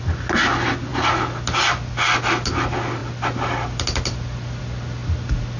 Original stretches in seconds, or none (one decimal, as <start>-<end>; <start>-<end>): 0.0-5.6